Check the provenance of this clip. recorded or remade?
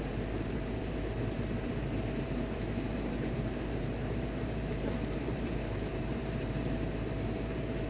remade